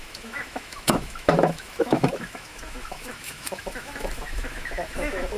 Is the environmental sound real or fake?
fake